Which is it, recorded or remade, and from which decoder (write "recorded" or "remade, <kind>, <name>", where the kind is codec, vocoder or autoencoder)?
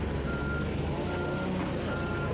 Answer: recorded